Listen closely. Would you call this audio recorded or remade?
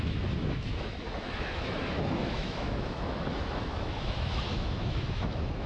remade